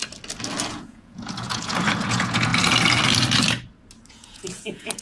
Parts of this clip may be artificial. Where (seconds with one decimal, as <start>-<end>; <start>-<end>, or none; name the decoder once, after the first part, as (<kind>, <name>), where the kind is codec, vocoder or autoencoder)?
0.7-2.5 (vocoder, Vocos); 4.1-5.0